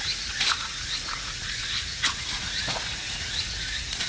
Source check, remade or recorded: remade